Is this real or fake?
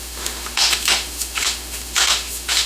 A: fake